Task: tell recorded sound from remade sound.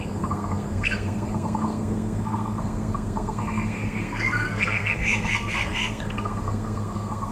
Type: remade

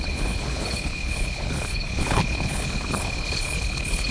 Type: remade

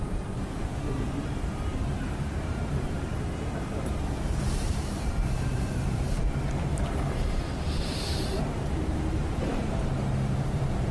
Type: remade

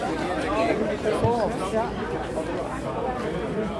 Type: recorded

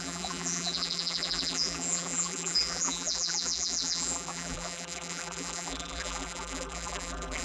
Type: remade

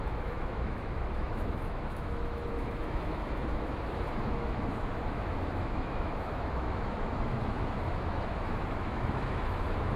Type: remade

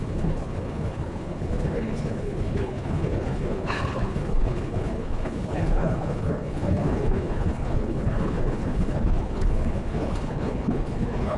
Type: remade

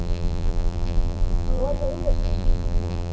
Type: remade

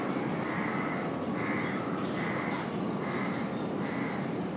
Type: recorded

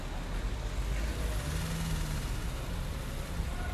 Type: recorded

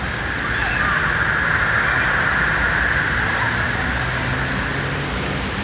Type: recorded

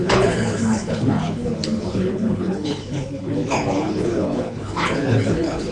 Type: remade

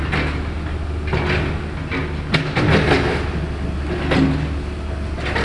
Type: recorded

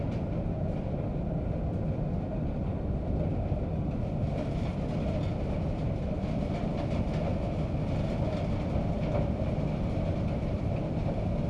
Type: recorded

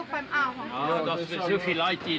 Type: recorded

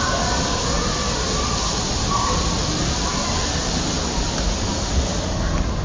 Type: recorded